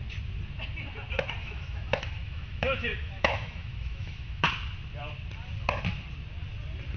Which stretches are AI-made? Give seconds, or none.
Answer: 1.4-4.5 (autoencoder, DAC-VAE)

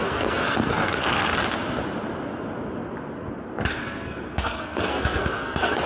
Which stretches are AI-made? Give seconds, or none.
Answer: 0.0-1.3 (codec, SNAC); 3.7-5.9